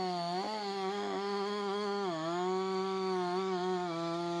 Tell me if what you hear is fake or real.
fake